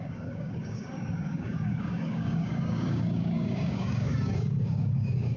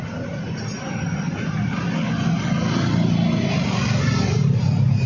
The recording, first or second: second